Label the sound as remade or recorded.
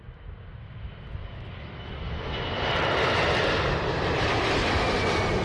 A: recorded